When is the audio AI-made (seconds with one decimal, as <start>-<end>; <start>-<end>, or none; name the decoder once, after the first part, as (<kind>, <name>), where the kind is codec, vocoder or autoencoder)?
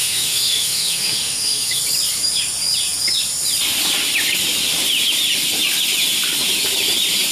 0.0-1.8 (autoencoder, DAC-VAE)